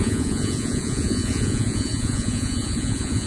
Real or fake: fake